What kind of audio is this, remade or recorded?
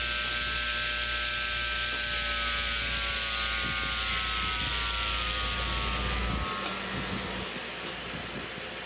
recorded